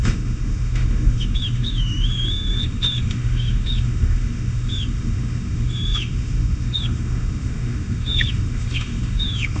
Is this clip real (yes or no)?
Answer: no